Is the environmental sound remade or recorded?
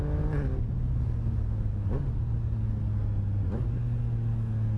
recorded